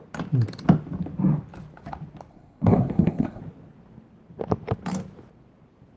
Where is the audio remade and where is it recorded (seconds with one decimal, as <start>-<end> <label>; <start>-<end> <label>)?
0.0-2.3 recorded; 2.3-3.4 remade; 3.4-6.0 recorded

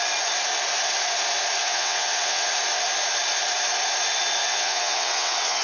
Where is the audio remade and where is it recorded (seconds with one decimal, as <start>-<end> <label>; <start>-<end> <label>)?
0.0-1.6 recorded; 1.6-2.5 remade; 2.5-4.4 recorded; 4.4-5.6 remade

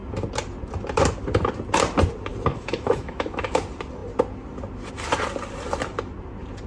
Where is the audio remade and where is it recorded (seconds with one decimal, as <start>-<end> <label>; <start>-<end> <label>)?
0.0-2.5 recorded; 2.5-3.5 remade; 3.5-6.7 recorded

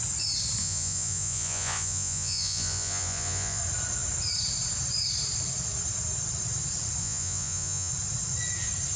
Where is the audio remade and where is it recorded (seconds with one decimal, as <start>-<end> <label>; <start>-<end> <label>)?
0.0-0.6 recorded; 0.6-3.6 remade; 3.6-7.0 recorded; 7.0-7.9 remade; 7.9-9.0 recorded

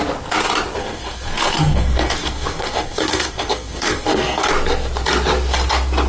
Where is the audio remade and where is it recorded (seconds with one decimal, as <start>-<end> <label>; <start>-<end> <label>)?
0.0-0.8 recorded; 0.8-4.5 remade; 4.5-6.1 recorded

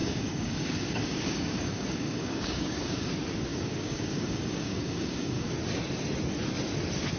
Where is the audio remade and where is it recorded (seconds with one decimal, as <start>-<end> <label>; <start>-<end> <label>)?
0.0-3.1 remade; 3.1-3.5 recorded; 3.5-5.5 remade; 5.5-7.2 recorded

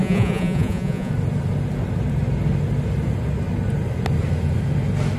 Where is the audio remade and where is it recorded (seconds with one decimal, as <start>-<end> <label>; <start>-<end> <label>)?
0.0-1.1 remade; 1.1-5.2 recorded